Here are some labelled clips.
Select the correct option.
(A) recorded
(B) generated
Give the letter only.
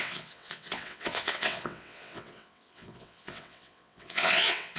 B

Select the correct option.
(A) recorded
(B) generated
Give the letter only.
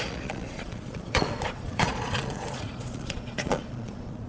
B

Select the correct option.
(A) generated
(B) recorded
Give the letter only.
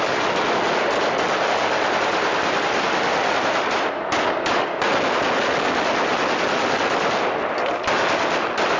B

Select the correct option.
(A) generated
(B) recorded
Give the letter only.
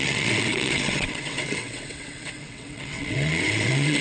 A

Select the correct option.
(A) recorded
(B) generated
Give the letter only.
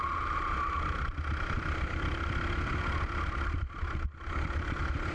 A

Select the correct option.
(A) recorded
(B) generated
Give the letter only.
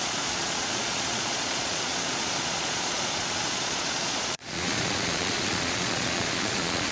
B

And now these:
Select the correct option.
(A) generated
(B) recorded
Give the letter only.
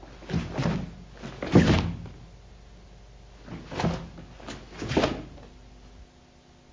B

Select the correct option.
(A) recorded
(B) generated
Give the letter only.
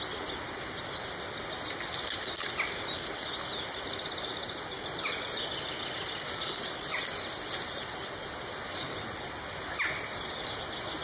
A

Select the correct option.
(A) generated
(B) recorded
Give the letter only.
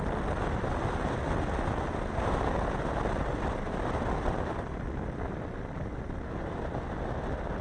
B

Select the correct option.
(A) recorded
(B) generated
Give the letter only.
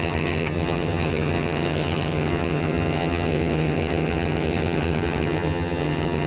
B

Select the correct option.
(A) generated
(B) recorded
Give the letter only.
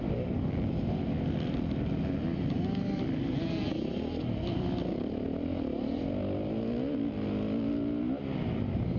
B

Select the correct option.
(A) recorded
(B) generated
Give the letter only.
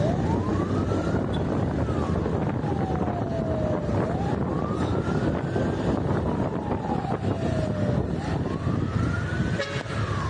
A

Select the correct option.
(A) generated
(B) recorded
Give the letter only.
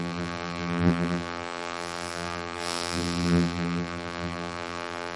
A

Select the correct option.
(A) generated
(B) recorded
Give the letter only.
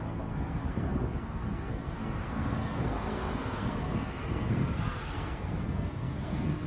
A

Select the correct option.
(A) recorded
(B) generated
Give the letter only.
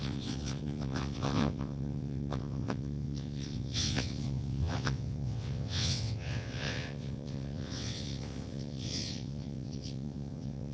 B